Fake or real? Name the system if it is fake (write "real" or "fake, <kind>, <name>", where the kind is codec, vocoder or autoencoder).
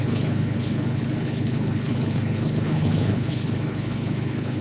fake, codec, HILCodec